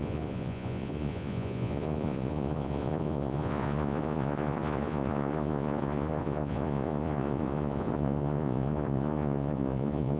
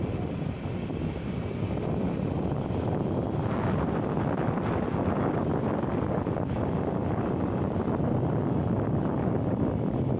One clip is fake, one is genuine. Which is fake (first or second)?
first